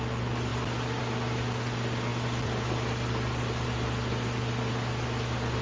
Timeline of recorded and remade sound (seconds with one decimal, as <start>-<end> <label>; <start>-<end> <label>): 0.0-5.6 recorded